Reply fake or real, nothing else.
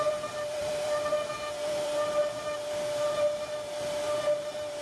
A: fake